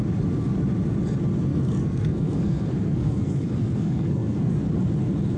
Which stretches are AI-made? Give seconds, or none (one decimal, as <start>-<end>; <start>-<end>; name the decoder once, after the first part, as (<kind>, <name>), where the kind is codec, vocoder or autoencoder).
1.5-4.5 (codec, SNAC)

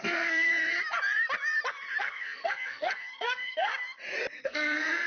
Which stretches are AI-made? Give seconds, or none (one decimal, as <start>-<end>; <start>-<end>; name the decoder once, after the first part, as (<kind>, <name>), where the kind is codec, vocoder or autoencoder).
0.0-0.5 (codec, SNAC); 2.0-3.7; 4.4-5.1

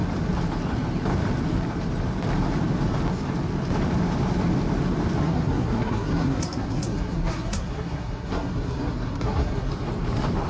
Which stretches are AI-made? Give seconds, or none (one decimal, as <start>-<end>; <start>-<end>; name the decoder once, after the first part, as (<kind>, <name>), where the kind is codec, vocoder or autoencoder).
5.2-9.7 (codec, SNAC)

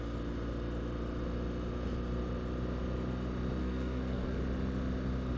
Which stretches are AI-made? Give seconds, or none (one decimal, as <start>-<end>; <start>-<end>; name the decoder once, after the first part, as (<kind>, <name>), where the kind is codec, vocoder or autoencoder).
3.6-4.4 (codec, SNAC)

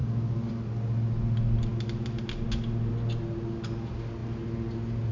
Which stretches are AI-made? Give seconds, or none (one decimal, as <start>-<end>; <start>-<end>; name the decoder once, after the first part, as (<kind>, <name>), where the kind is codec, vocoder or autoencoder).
none

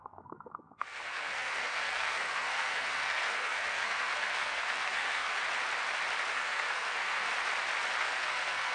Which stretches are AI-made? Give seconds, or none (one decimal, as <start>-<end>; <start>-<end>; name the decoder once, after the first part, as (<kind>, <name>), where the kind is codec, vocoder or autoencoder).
0.0-5.4 (codec, SNAC); 6.3-7.3; 8.0-8.7

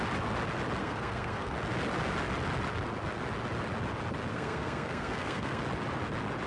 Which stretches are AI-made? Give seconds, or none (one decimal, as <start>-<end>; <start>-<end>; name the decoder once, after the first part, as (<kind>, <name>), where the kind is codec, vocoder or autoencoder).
0.8-1.5 (codec, SNAC); 4.3-5.6

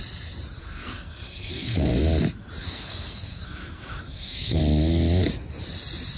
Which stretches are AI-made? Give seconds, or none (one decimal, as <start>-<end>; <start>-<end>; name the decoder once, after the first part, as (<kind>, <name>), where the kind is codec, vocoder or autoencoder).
0.6-1.9 (codec, SNAC); 2.6-4.6